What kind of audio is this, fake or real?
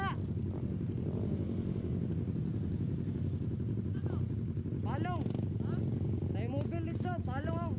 real